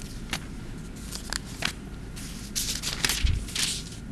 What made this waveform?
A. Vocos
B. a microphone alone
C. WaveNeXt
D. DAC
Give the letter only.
B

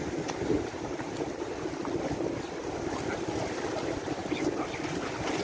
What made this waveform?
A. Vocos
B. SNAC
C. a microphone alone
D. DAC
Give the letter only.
C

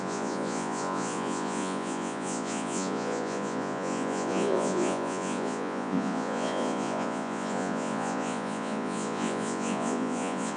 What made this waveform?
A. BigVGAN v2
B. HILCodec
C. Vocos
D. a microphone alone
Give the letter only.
C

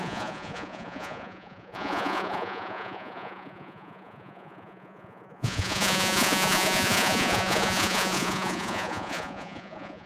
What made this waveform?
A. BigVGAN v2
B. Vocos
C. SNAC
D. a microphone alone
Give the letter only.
B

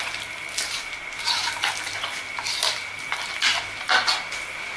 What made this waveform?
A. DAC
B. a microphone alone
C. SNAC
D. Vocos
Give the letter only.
B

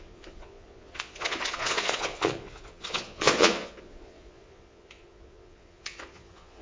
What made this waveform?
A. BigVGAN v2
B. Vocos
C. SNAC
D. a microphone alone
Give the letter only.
B